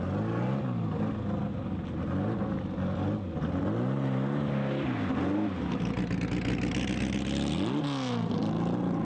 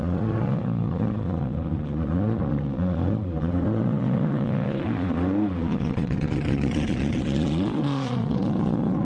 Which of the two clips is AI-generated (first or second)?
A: second